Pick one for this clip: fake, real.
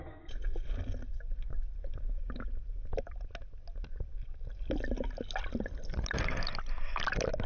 real